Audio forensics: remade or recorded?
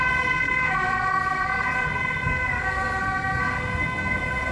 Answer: remade